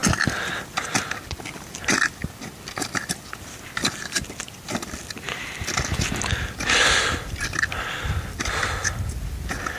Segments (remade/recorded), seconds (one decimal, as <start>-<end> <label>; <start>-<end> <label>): 0.0-9.8 recorded